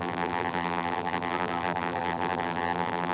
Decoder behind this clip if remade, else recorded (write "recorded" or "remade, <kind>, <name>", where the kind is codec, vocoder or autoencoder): remade, vocoder, BigVGAN v2